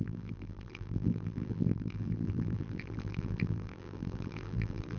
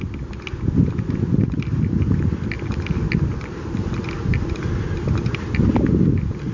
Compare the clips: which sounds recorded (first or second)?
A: second